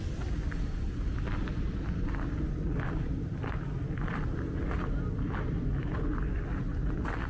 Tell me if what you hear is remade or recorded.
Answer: recorded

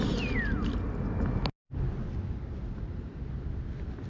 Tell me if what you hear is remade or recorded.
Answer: recorded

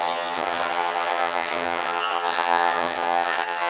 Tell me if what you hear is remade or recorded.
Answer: remade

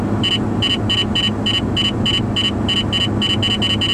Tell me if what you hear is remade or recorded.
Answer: recorded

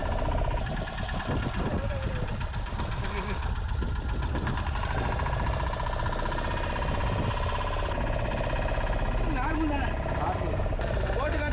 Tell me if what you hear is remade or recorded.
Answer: recorded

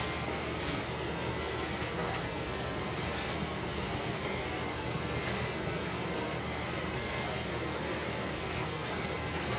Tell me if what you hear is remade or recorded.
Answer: remade